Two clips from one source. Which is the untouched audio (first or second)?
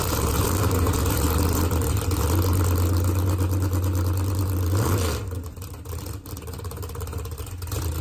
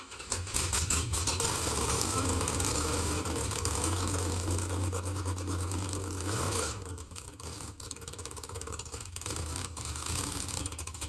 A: first